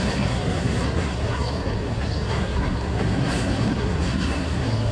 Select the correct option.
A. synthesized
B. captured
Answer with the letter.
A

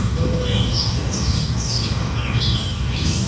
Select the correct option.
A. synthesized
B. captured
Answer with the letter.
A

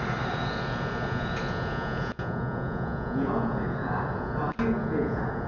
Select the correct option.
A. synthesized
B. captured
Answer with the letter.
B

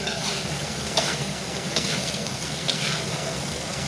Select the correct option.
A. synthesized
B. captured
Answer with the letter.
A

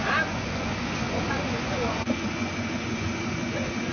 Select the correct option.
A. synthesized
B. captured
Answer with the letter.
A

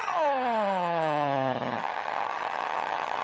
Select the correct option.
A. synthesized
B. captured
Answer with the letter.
A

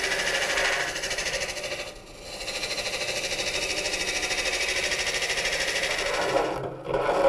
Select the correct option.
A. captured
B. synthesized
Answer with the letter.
A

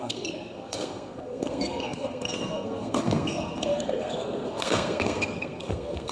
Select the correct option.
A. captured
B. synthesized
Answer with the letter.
B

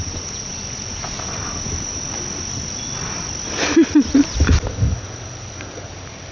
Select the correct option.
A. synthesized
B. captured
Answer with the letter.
B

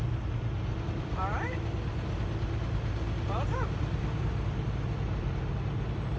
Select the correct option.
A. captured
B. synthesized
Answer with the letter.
A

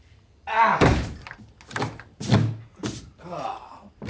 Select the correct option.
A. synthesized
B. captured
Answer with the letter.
B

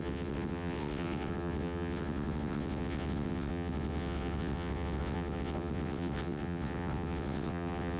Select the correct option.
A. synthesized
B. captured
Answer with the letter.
A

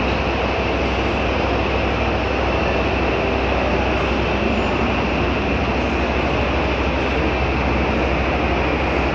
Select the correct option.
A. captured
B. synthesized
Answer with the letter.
A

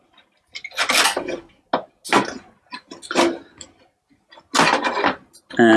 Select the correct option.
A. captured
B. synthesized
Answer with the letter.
A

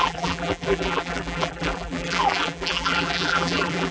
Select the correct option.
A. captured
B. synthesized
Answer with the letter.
B